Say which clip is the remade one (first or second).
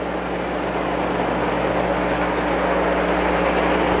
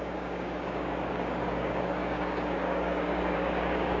second